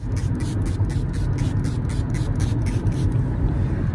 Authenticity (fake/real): real